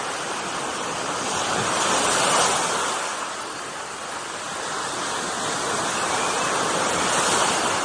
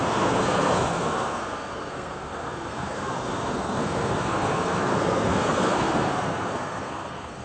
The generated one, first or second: second